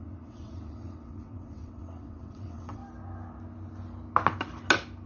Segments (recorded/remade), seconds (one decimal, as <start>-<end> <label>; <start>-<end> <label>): 0.0-2.8 remade; 2.8-5.1 recorded